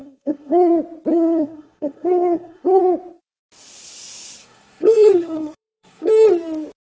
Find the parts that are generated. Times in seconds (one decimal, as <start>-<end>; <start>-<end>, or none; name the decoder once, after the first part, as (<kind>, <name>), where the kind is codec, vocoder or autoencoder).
0.0-0.7 (codec, SNAC); 1.1-2.8; 4.4-6.1